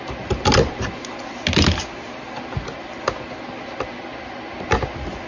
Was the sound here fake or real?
real